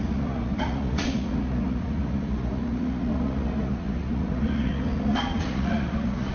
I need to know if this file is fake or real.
fake